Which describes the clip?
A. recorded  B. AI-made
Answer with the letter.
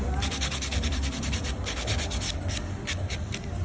B